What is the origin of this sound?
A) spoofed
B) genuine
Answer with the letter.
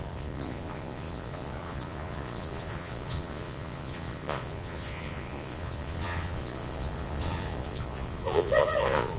A